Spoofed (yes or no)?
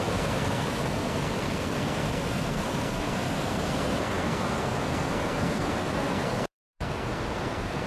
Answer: yes